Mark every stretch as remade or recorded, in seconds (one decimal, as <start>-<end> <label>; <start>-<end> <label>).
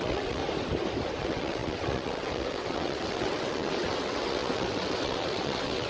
0.0-0.4 remade; 0.4-1.2 recorded; 1.2-5.9 remade